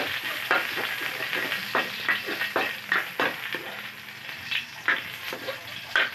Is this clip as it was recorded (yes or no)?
yes